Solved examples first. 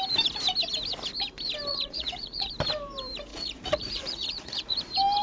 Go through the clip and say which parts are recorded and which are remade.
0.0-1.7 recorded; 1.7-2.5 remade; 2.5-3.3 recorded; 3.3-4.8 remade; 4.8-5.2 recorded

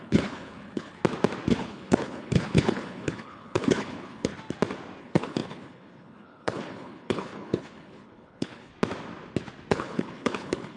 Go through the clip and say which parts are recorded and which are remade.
0.0-1.0 remade; 1.0-1.6 recorded; 1.6-4.3 remade; 4.3-5.0 recorded; 5.0-8.7 remade; 8.7-9.7 recorded; 9.7-10.8 remade

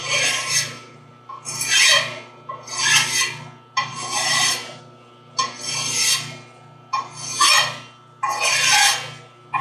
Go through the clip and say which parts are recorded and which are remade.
0.0-1.1 remade; 1.1-3.9 recorded; 3.9-4.8 remade; 4.8-9.6 recorded